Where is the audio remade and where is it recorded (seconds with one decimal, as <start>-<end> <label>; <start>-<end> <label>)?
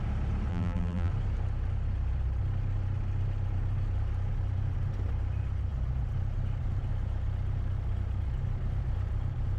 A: 0.0-0.5 recorded; 0.5-1.1 remade; 1.1-9.6 recorded